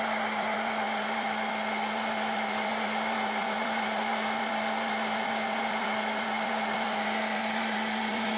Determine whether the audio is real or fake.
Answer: fake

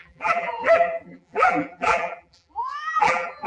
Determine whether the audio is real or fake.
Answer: fake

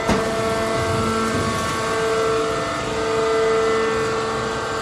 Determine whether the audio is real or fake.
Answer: real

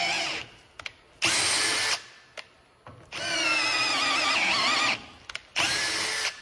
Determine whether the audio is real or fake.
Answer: real